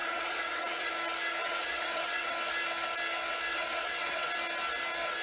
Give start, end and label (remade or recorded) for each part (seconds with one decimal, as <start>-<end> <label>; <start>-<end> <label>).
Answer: 0.0-0.9 remade; 0.9-1.4 recorded; 1.4-2.3 remade; 2.3-3.5 recorded; 3.5-4.3 remade; 4.3-5.2 recorded

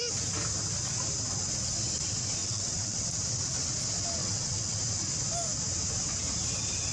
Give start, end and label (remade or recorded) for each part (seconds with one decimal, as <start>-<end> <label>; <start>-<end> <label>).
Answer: 0.0-2.4 recorded; 2.4-3.1 remade; 3.1-4.2 recorded; 4.2-4.8 remade; 4.8-6.9 recorded

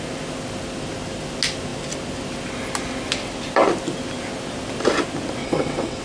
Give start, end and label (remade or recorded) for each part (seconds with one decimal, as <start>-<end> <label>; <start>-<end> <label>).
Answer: 0.0-5.4 recorded; 5.4-6.0 remade

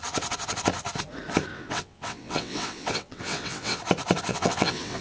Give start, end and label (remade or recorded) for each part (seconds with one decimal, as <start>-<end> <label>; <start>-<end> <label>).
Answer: 0.0-1.5 recorded; 1.5-3.8 remade; 3.8-4.3 recorded; 4.3-5.0 remade

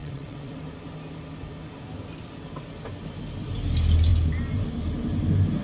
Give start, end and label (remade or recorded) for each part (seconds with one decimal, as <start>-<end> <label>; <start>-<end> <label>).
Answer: 0.0-0.5 remade; 0.5-5.6 recorded

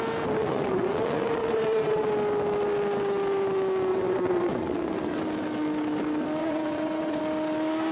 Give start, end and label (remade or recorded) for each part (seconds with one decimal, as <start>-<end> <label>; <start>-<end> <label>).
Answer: 0.0-0.4 recorded; 0.4-2.1 remade; 2.1-3.9 recorded; 3.9-5.2 remade; 5.2-6.4 recorded; 6.4-7.2 remade; 7.2-7.9 recorded